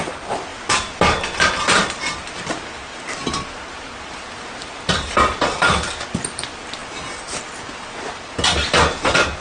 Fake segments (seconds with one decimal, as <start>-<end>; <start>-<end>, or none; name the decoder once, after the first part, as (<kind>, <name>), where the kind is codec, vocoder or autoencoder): 0.5-5.7 (vocoder, BigVGAN v2)